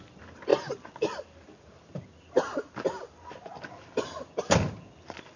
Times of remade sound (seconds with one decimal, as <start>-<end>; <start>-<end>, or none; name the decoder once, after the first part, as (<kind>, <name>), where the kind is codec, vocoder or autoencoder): none